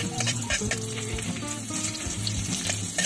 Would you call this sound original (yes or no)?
no